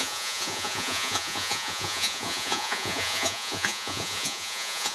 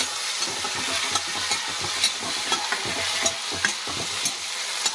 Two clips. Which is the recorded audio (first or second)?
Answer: second